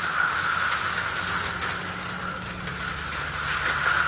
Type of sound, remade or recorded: recorded